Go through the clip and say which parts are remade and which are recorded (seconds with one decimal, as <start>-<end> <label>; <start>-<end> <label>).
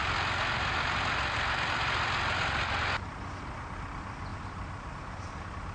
0.0-5.7 recorded